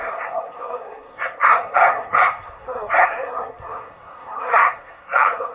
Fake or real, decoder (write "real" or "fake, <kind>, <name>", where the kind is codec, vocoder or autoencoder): fake, codec, SNAC